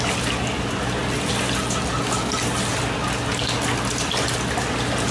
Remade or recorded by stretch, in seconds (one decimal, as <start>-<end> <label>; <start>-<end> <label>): 0.0-5.1 recorded

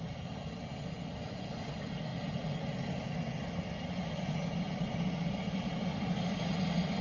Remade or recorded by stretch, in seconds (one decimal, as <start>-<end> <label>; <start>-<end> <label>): 0.0-7.0 recorded